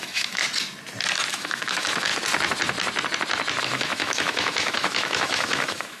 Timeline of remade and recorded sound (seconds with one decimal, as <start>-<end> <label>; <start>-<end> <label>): 0.0-0.4 remade; 0.4-1.3 recorded; 1.3-2.1 remade; 2.1-3.6 recorded; 3.6-6.0 remade